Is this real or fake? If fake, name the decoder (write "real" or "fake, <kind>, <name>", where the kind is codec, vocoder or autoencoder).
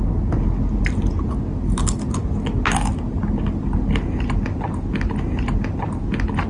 real